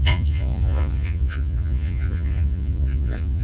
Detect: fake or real fake